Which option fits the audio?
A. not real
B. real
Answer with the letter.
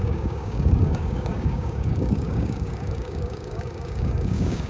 A